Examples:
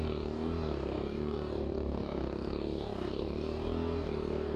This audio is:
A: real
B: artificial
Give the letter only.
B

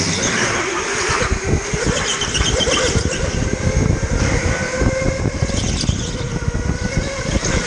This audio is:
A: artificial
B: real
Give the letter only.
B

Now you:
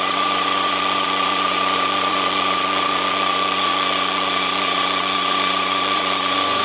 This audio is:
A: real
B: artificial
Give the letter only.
B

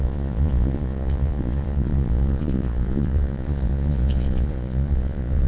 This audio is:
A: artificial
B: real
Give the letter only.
A